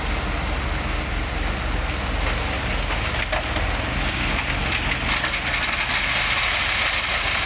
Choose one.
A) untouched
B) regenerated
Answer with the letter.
A